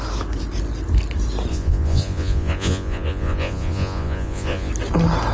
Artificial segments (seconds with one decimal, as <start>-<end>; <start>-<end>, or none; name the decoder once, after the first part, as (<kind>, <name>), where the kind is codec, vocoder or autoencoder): 1.5-4.7 (vocoder, Vocos)